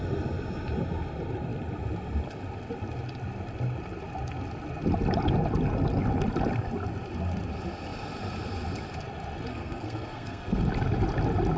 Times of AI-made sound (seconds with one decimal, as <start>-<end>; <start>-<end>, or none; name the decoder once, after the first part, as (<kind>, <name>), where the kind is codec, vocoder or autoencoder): 9.5-10.6 (codec, SNAC)